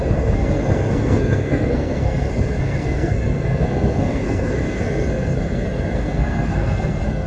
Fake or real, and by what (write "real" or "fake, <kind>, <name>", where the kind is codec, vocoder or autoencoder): fake, codec, SNAC